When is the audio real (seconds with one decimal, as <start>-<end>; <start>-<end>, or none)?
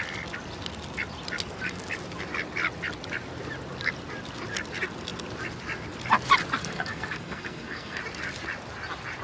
0.0-6.6; 8.0-9.2